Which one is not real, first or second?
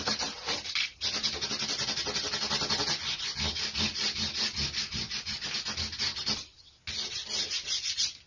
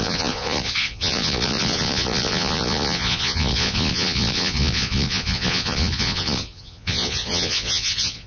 second